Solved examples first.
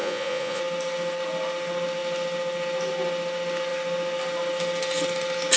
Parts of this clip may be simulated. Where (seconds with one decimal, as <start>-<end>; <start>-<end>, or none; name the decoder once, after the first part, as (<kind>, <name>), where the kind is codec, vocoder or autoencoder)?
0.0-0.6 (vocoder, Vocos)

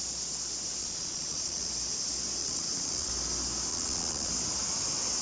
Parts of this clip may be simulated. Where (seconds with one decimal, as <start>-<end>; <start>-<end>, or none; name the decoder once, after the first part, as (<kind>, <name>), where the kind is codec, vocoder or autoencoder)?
0.8-1.7 (vocoder, Vocos); 2.4-3.1; 3.7-4.3

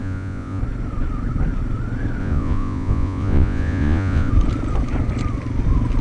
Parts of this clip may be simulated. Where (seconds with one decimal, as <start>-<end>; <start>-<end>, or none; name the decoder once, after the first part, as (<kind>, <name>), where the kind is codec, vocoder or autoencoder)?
0.0-0.6 (vocoder, Vocos); 2.2-4.3

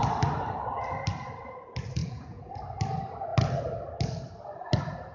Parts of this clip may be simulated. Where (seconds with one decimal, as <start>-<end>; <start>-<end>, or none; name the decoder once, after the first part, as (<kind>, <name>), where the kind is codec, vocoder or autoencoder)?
2.0-2.5 (vocoder, Vocos)

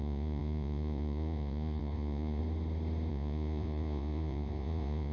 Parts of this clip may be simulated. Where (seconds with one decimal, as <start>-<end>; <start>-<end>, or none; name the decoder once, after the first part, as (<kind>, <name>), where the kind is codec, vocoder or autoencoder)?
0.0-2.4 (vocoder, Vocos); 3.1-5.1